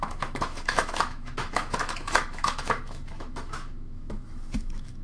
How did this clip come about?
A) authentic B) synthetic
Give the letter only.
B